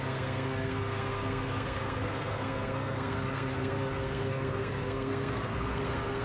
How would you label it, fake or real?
fake